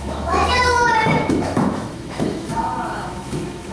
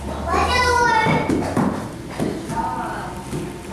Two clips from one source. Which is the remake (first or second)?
first